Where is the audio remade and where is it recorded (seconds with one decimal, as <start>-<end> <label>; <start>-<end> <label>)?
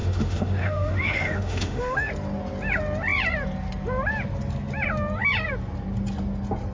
0.0-2.1 remade; 2.1-6.7 recorded